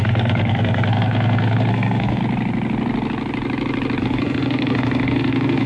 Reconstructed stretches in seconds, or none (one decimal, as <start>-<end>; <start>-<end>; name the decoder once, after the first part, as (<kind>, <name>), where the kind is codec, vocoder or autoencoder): 0.0-2.2 (codec, SNAC); 4.0-5.7